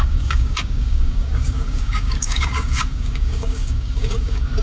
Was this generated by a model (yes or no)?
yes